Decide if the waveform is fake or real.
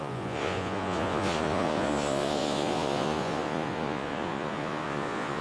fake